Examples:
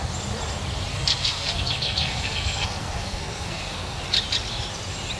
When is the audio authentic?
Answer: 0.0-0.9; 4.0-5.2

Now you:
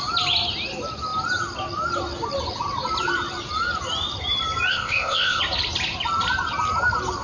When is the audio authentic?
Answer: 0.0-4.7; 5.4-7.2